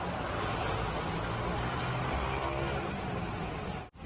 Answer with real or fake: real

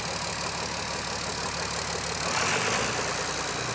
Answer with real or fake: real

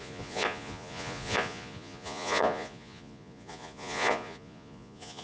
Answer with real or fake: fake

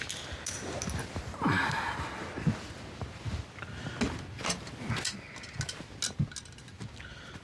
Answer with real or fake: real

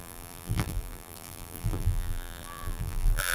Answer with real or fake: fake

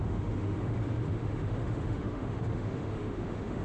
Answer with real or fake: fake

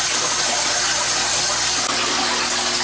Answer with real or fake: real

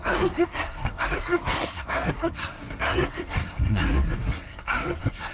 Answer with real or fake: fake